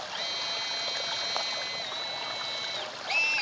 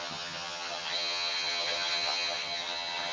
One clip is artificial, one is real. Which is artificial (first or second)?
second